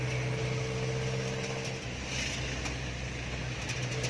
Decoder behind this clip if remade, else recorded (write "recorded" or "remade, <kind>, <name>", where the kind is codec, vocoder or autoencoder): recorded